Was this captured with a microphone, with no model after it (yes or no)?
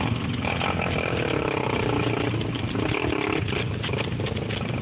yes